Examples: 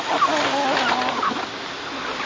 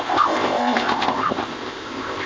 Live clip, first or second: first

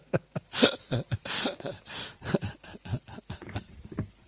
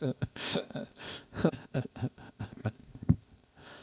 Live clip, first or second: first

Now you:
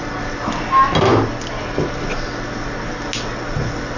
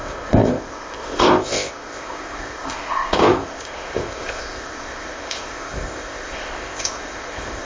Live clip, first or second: first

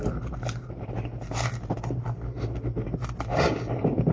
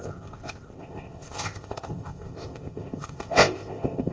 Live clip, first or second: first